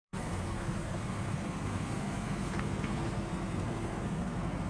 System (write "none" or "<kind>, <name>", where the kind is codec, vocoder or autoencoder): codec, SNAC